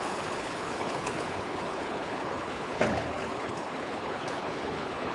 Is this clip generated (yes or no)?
yes